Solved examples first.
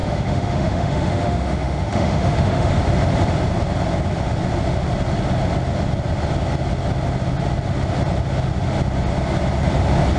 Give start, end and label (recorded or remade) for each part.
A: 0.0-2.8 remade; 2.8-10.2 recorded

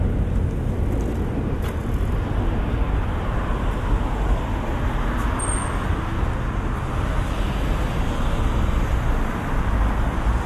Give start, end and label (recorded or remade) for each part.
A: 0.0-10.5 recorded

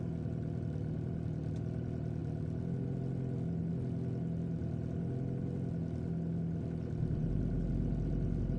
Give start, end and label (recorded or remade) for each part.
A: 0.0-8.6 recorded

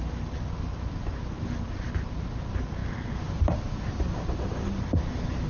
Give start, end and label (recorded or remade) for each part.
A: 0.0-5.5 recorded

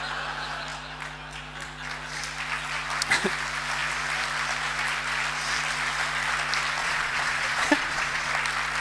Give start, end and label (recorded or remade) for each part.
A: 0.0-6.8 recorded; 6.8-8.3 remade; 8.3-8.8 recorded